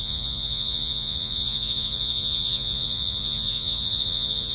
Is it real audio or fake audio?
fake